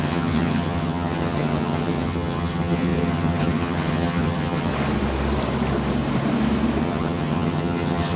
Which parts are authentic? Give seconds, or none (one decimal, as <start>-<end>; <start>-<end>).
4.7-6.8